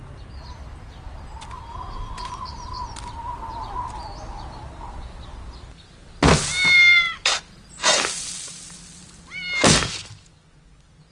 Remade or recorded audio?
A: recorded